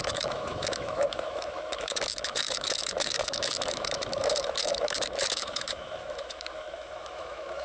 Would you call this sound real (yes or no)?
no